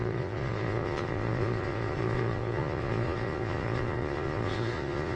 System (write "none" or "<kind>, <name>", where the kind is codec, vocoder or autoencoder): vocoder, Vocos